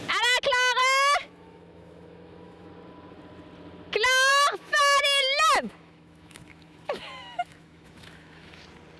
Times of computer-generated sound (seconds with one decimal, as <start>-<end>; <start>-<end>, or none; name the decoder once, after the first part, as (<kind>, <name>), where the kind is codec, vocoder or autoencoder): 0.8-2.7 (autoencoder, DAC-VAE); 4.3-8.6